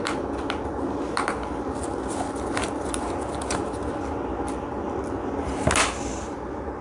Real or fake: real